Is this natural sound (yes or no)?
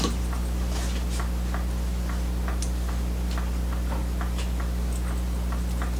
yes